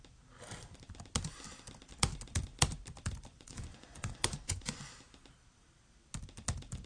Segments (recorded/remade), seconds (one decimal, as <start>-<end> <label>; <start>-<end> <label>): 0.0-3.3 recorded; 3.3-4.9 remade; 4.9-6.9 recorded

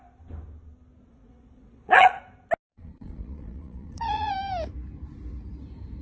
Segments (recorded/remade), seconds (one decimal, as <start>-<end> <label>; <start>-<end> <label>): 0.0-1.1 recorded; 1.1-2.2 remade; 2.2-2.7 recorded; 2.7-4.3 remade; 4.3-6.0 recorded

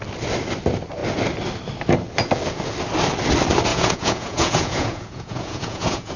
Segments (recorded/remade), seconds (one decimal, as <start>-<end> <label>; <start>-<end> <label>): 0.0-3.7 recorded; 3.7-6.2 remade

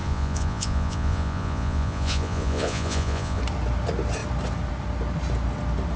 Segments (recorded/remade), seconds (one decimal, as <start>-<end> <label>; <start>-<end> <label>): 0.0-3.4 remade; 3.4-6.0 recorded

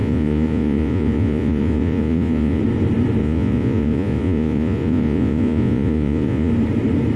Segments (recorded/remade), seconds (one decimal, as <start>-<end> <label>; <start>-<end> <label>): 0.0-2.6 remade; 2.6-3.2 recorded; 3.2-6.5 remade; 6.5-7.2 recorded

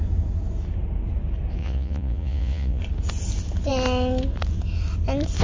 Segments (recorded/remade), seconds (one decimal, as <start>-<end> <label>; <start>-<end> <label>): 0.0-1.6 recorded; 1.6-2.8 remade; 2.8-5.4 recorded

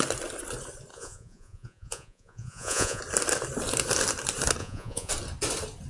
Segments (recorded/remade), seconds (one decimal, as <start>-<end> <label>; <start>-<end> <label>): 0.0-0.9 recorded; 0.9-3.0 remade; 3.0-4.6 recorded; 4.6-5.1 remade; 5.1-5.9 recorded